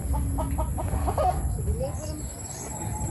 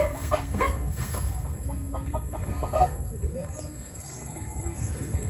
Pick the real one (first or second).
first